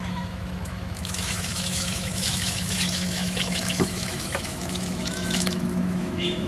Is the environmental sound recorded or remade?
remade